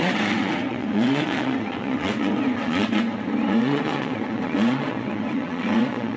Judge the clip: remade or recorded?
remade